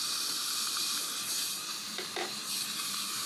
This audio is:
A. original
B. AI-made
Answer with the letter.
B